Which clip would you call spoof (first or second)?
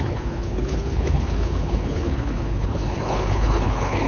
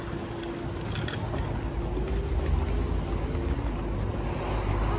first